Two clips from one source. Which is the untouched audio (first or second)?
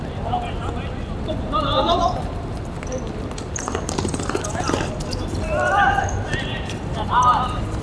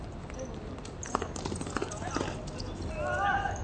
second